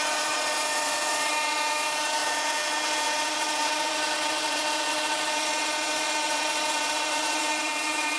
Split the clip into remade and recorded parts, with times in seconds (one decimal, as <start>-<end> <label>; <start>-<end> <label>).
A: 0.0-8.2 remade